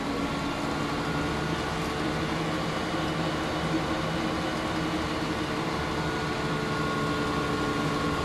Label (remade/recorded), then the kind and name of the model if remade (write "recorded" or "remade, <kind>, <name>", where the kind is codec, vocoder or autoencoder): recorded